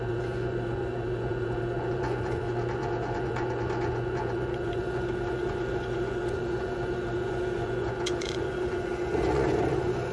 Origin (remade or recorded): remade